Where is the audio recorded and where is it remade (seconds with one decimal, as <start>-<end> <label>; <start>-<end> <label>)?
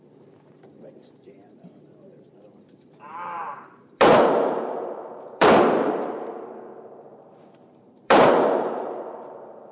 0.0-9.7 remade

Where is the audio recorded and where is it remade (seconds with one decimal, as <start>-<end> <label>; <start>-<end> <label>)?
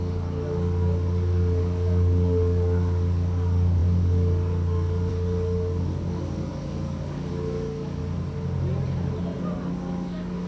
0.0-8.0 remade; 8.0-9.7 recorded; 9.7-10.5 remade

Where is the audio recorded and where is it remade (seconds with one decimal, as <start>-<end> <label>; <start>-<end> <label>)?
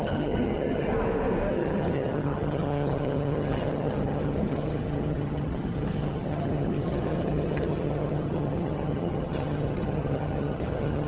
0.0-0.9 remade; 0.9-1.5 recorded; 1.5-11.1 remade